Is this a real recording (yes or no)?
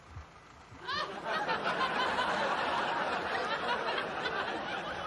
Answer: yes